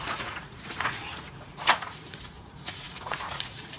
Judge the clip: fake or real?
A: fake